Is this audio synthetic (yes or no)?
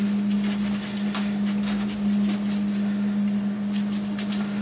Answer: no